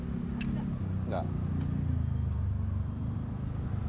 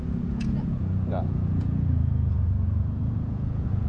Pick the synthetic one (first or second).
second